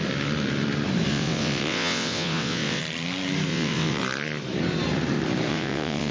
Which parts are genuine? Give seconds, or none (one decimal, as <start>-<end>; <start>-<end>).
0.0-1.1; 2.8-3.5; 4.0-5.5